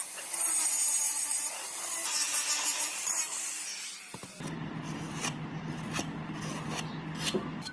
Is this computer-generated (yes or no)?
no